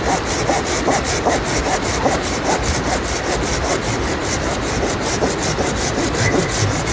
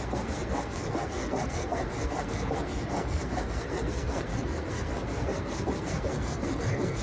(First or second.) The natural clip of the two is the first